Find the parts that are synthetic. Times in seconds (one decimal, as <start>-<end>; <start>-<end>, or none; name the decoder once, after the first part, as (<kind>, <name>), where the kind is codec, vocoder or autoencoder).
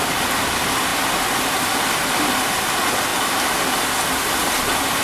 none